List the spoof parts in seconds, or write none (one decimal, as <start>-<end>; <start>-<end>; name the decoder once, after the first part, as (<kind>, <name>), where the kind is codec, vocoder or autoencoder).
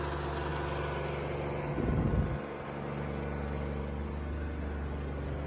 none